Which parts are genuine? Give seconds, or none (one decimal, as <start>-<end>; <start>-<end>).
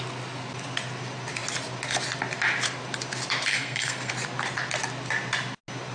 0.0-3.5; 4.1-5.9